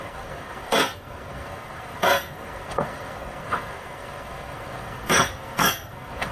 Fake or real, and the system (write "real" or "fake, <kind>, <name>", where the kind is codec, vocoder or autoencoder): fake, codec, SNAC